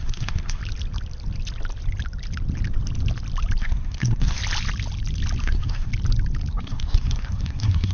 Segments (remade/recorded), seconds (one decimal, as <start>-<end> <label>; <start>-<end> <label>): 0.0-0.6 remade; 0.6-3.6 recorded; 3.6-4.4 remade; 4.4-5.4 recorded; 5.4-5.9 remade; 5.9-6.5 recorded; 6.5-7.9 remade